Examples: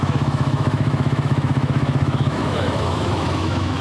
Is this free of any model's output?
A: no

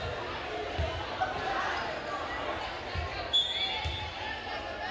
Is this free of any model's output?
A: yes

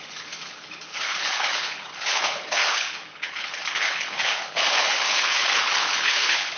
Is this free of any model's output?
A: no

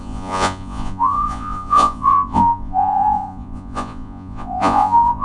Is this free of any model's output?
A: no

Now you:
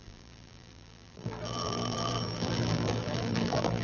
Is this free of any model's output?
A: no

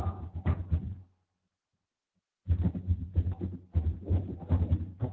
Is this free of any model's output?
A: yes